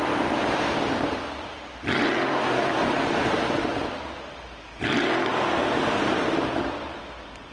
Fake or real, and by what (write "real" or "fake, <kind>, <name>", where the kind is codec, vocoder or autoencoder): fake, vocoder, BigVGAN v2